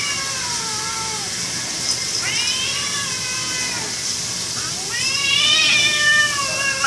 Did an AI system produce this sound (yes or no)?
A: no